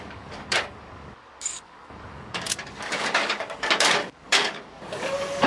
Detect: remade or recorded remade